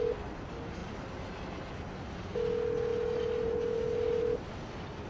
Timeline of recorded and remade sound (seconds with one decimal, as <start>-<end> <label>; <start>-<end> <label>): 0.0-0.8 recorded; 0.8-1.4 remade; 1.4-2.9 recorded; 2.9-4.2 remade; 4.2-5.1 recorded